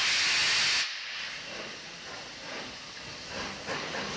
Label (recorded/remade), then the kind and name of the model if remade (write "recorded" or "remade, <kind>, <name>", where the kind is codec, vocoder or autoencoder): recorded